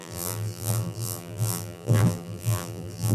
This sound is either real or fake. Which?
fake